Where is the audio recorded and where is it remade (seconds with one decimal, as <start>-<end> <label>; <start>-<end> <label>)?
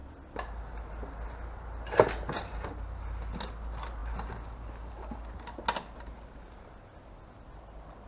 0.0-8.1 recorded